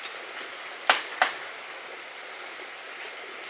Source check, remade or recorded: recorded